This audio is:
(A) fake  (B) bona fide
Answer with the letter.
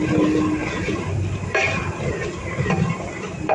A